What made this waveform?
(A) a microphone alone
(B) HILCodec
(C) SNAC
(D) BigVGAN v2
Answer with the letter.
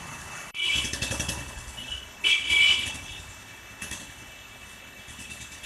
B